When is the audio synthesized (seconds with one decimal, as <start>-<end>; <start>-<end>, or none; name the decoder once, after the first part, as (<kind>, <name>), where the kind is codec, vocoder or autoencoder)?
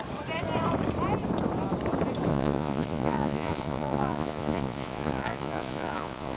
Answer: 2.3-6.4 (vocoder, Vocos)